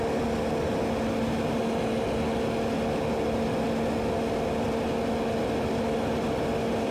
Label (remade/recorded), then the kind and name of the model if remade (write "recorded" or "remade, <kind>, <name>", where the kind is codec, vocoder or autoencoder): recorded